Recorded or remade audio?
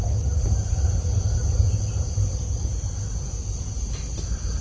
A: recorded